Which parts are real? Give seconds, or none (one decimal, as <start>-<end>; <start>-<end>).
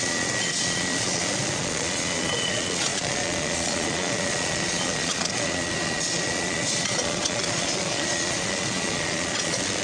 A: none